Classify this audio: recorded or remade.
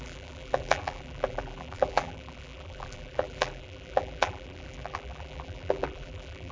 remade